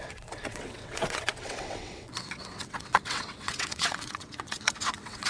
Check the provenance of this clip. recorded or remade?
remade